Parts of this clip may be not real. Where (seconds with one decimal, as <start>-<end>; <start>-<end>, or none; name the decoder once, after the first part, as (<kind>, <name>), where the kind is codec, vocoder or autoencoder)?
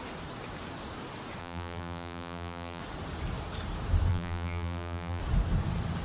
1.4-2.8 (vocoder, BigVGAN v2); 4.1-5.2